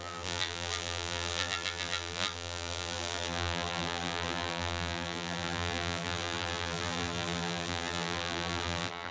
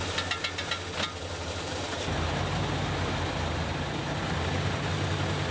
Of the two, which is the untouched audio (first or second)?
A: second